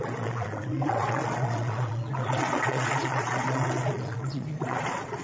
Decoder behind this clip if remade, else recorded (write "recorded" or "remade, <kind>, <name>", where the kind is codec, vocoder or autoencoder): remade, vocoder, Vocos